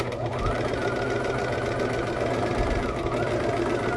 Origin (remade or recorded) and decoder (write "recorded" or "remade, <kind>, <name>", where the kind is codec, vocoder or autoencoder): recorded